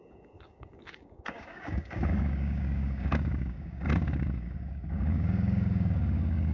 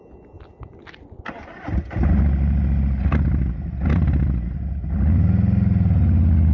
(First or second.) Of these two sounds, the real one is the second